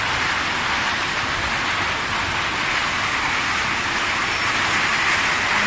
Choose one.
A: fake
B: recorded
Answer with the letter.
B